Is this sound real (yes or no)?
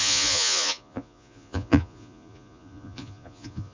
no